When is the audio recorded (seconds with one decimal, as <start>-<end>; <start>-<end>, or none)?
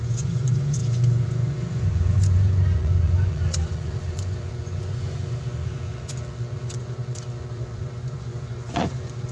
none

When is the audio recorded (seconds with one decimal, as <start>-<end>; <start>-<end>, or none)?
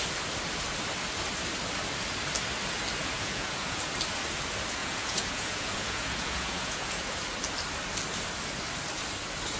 0.0-3.0; 3.8-4.8; 7.1-9.6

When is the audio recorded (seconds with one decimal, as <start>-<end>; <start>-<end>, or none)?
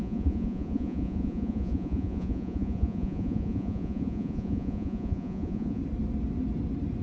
5.8-7.0